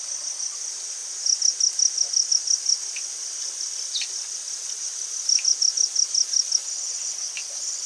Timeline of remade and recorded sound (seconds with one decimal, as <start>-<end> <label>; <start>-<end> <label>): 0.0-7.9 recorded